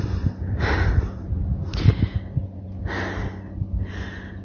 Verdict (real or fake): real